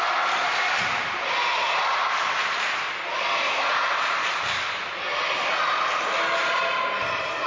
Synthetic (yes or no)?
no